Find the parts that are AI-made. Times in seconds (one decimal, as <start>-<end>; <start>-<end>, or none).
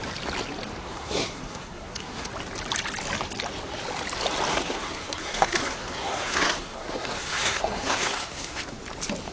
0.8-2.3; 4.5-8.8